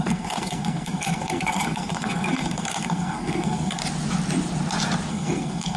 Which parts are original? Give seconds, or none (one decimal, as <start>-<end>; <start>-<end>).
3.8-5.1